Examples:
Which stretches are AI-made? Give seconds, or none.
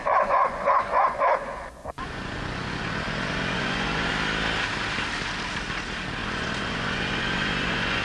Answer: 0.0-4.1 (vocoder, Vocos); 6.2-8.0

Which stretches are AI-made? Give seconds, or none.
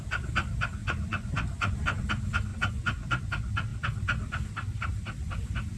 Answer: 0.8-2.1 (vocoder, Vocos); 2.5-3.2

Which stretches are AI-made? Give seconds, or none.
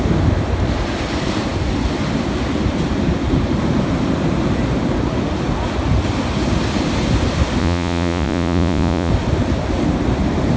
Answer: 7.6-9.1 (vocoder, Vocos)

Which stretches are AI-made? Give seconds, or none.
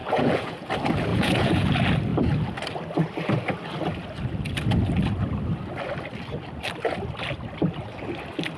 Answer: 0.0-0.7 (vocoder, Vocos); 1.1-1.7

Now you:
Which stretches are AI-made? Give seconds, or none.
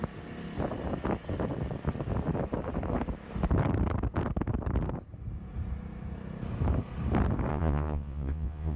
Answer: 7.5-8.8 (vocoder, Vocos)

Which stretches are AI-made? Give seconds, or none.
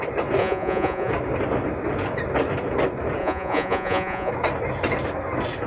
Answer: 0.4-1.1 (vocoder, Vocos); 3.2-4.3